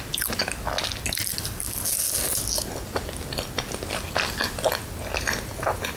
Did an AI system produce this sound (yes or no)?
no